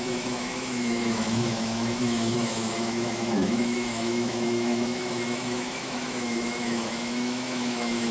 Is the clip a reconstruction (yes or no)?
yes